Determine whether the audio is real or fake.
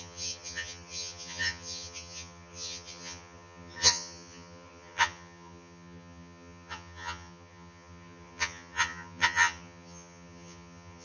fake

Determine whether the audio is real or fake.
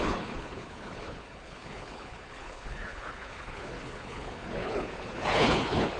fake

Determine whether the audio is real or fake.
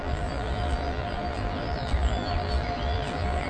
fake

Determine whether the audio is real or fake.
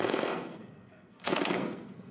fake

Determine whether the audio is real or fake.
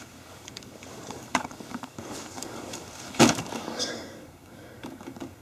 fake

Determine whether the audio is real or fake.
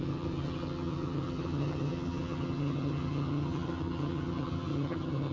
fake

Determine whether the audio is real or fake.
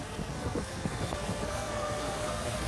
fake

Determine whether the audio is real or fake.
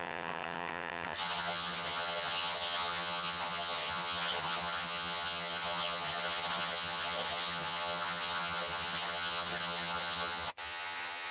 fake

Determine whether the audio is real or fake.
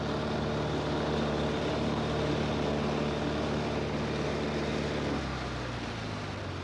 real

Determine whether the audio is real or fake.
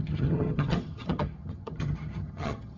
fake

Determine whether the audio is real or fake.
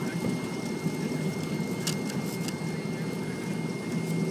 real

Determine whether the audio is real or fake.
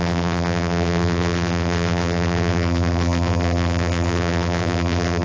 fake